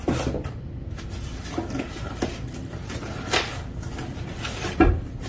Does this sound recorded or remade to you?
remade